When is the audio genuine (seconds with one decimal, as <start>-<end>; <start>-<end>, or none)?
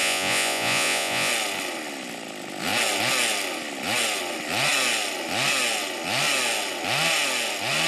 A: 1.3-7.9